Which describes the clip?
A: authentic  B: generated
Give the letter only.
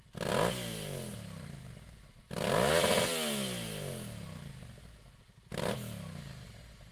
A